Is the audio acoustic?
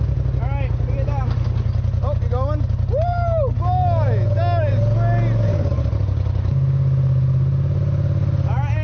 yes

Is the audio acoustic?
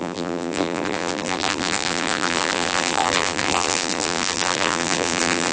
no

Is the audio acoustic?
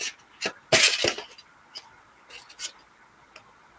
yes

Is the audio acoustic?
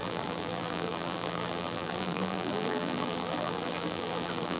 no